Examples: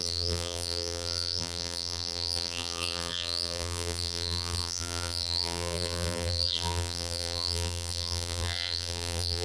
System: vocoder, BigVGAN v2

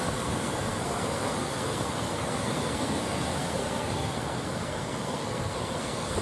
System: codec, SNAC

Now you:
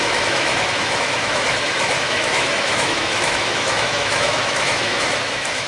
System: autoencoder, DAC-VAE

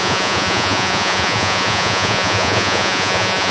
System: vocoder, Vocos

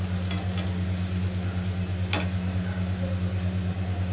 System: none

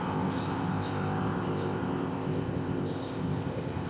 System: codec, ZipCodec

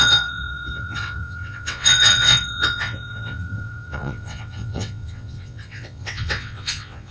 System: vocoder, WaveNeXt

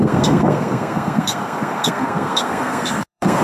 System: codec, SNAC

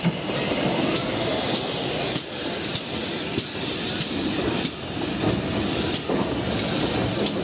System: none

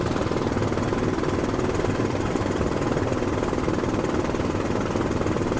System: vocoder, BigVGAN v2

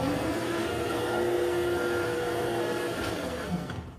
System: codec, SNAC